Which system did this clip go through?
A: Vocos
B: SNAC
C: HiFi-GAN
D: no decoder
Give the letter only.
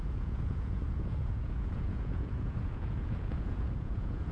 A